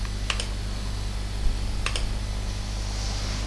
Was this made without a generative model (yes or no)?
yes